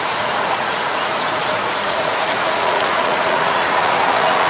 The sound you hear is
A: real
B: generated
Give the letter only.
B